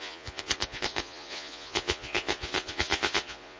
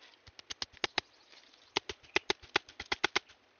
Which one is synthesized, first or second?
first